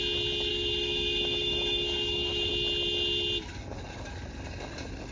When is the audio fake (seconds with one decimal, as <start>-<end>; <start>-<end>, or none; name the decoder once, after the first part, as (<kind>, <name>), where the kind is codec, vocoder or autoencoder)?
0.5-2.5 (autoencoder, DAC-VAE)